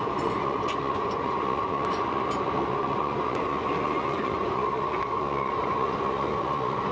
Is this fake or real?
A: fake